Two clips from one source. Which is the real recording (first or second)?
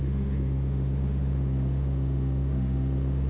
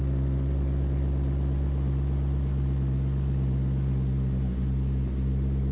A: second